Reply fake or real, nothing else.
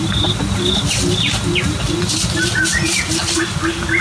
real